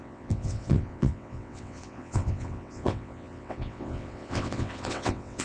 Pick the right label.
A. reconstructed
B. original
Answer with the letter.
A